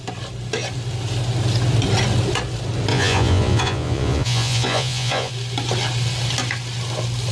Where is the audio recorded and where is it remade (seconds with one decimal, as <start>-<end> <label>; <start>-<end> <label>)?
0.0-2.9 recorded; 2.9-5.3 remade; 5.3-7.3 recorded